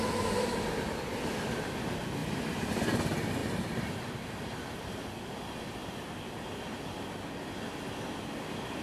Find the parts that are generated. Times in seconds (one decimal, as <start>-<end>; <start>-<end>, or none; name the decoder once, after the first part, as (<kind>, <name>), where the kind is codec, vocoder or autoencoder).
3.4-4.9 (vocoder, BigVGAN v2)